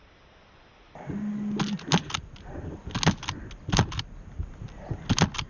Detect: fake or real real